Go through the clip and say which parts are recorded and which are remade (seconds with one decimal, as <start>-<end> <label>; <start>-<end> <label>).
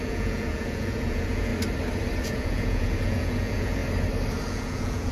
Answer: 0.0-1.5 remade; 1.5-2.2 recorded; 2.2-3.8 remade; 3.8-4.5 recorded; 4.5-5.1 remade